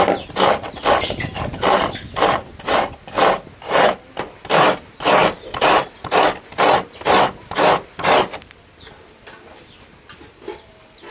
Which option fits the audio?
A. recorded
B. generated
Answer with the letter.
A